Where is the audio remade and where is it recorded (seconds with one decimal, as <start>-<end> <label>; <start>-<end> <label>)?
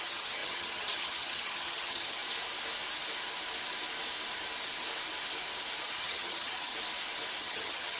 0.0-2.2 remade; 2.2-5.8 recorded; 5.8-6.7 remade; 6.7-7.4 recorded; 7.4-8.0 remade